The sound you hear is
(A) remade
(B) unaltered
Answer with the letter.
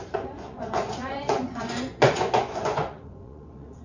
A